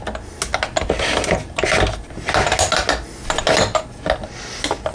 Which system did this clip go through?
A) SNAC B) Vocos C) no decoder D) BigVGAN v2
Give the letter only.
C